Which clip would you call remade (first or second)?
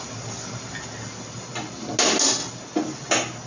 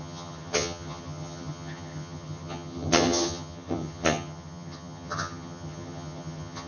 second